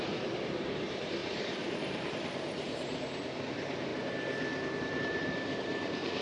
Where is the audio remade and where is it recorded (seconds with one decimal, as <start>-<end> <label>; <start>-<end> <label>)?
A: 0.0-3.9 remade; 3.9-4.8 recorded; 4.8-6.2 remade